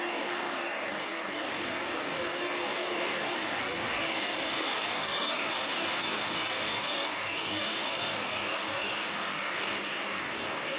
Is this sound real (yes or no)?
no